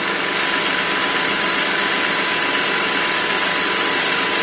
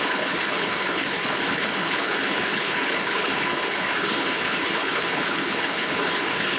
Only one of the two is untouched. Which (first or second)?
first